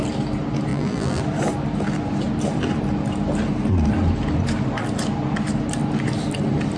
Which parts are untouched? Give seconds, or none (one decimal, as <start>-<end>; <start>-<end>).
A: 0.0-0.7; 1.2-6.8